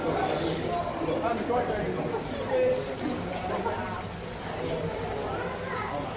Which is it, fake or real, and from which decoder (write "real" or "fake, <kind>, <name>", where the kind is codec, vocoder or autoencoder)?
real